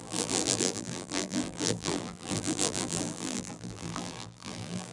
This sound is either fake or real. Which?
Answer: fake